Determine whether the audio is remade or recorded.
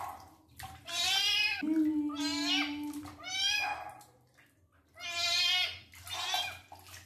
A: recorded